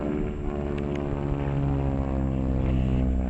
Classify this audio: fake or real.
real